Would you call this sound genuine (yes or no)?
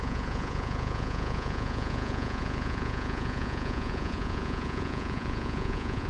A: no